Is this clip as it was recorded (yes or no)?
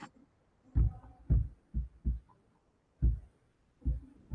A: yes